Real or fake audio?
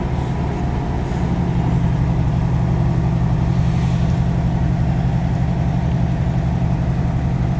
real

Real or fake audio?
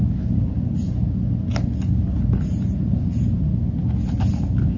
real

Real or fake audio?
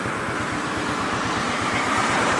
fake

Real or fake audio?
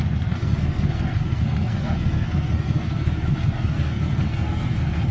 fake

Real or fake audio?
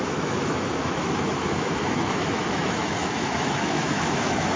fake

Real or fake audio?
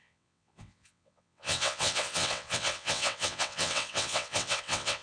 fake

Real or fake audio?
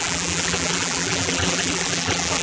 fake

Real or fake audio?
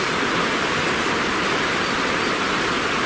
real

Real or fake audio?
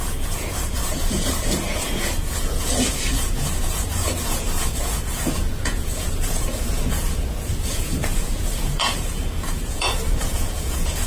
fake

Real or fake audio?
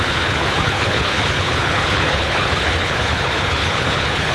fake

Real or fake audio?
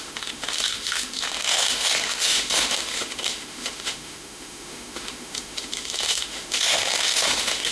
fake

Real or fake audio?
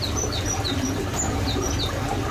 real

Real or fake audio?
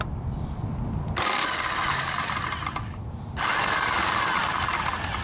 real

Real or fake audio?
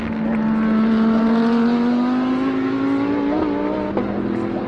real